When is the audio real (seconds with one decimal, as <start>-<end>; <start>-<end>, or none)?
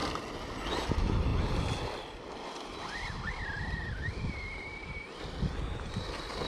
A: 0.0-6.5